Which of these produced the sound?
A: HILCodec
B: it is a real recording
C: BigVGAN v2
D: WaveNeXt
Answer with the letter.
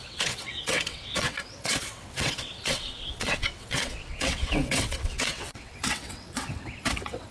D